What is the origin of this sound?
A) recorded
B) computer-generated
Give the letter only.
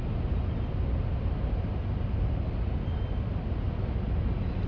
A